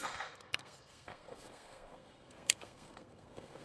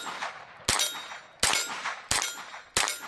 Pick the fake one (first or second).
first